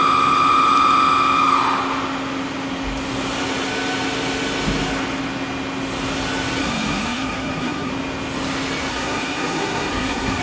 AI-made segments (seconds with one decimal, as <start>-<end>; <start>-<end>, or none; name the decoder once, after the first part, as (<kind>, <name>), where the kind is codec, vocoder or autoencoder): 6.6-7.9 (codec, SNAC); 8.9-10.4